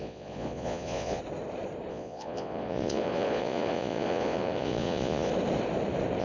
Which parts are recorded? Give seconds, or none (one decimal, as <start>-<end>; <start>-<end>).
1.2-1.9; 5.3-6.2